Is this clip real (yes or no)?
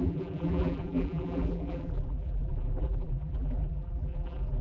no